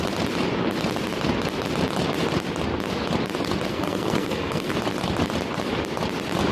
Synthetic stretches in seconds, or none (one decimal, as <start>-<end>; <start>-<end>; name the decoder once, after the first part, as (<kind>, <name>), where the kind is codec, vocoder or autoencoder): 3.7-4.7 (codec, SNAC)